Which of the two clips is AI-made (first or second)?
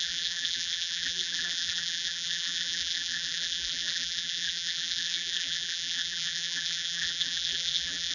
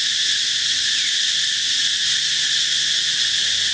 first